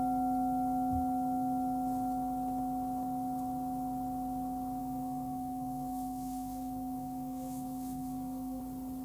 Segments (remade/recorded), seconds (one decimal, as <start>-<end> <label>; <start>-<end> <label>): 0.0-4.8 recorded; 4.8-8.6 remade; 8.6-9.0 recorded

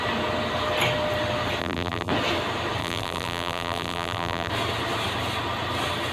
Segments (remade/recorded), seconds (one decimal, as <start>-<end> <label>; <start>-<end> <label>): 0.0-1.6 recorded; 1.6-2.1 remade; 2.1-2.8 recorded; 2.8-4.5 remade; 4.5-6.1 recorded

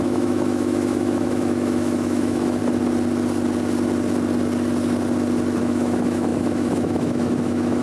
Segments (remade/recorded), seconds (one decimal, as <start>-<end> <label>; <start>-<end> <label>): 0.0-2.6 remade; 2.6-5.6 recorded; 5.6-7.8 remade

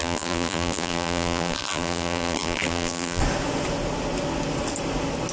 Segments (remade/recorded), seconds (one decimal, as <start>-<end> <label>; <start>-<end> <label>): 0.0-3.2 remade; 3.2-5.3 recorded

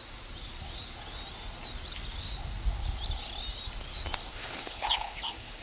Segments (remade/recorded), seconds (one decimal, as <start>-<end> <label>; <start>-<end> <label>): 0.0-4.3 recorded; 4.3-5.6 remade

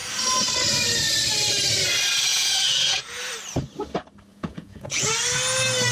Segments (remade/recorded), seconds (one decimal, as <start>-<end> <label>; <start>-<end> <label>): 0.0-2.3 recorded; 2.3-3.2 remade; 3.2-4.3 recorded; 4.3-5.1 remade; 5.1-5.9 recorded

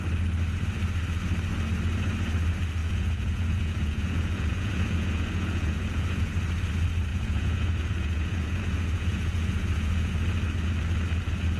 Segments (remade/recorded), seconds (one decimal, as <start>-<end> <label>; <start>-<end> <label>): 0.0-2.8 recorded; 2.8-6.2 remade; 6.2-7.1 recorded; 7.1-10.1 remade; 10.1-11.6 recorded